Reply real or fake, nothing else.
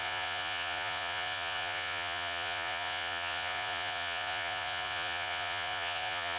fake